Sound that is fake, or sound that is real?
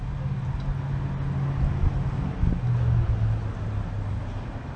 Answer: real